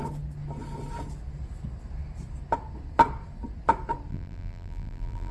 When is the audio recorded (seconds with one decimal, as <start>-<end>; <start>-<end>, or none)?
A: 0.0-4.1